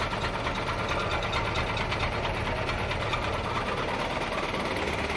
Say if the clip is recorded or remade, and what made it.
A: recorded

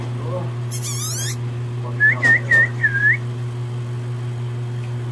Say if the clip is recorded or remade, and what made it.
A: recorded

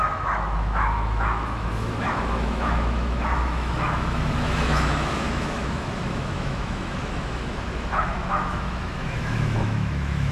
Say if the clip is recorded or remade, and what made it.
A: remade, autoencoder, DAC-VAE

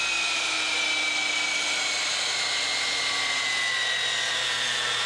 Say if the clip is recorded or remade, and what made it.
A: recorded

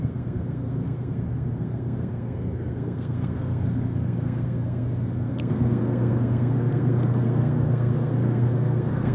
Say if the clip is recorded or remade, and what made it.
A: remade, codec, SNAC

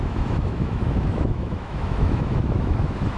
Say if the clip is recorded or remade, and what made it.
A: remade, autoencoder, DAC-VAE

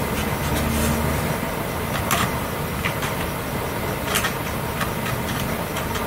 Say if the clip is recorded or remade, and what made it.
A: recorded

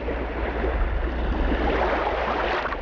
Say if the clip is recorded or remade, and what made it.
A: recorded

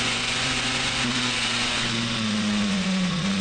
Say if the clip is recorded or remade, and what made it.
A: remade, vocoder, Vocos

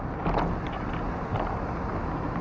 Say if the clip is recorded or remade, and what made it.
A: recorded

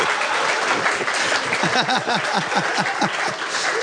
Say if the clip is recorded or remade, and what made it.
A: recorded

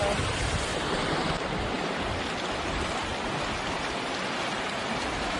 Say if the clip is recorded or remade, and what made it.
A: recorded